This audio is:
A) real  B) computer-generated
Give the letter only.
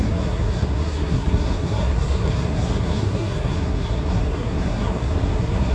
B